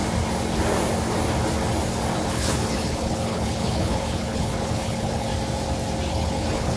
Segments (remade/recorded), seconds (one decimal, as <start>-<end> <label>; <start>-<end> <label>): 0.0-2.3 recorded; 2.3-5.3 remade; 5.3-6.1 recorded; 6.1-6.8 remade